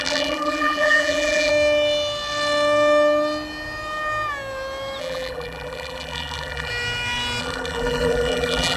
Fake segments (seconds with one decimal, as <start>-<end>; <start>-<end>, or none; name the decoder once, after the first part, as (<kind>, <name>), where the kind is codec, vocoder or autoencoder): 0.0-1.5 (vocoder, BigVGAN v2); 5.0-6.7; 7.4-8.8